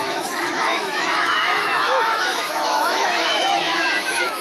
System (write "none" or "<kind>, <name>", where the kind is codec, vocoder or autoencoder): autoencoder, DAC-VAE